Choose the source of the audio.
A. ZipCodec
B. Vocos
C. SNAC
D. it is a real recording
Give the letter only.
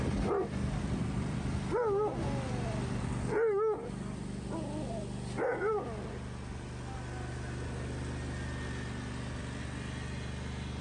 D